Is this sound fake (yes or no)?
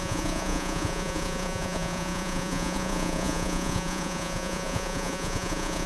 yes